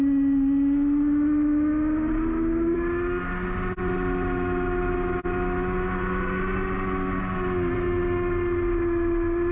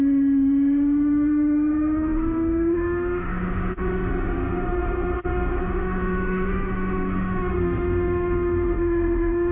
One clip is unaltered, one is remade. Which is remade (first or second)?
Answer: second